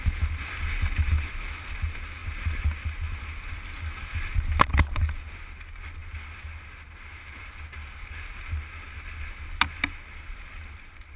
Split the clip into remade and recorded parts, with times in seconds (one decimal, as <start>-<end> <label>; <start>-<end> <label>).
0.0-11.2 recorded